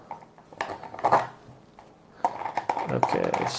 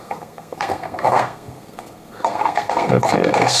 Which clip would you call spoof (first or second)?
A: second